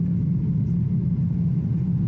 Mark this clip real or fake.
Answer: real